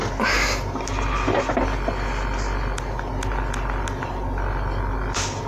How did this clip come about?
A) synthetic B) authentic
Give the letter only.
B